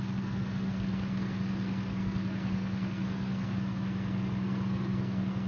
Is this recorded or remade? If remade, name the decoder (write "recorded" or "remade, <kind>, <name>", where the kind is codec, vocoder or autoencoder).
remade, codec, SNAC